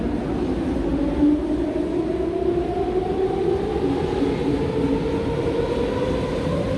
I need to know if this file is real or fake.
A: real